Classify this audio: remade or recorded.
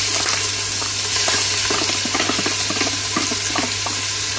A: recorded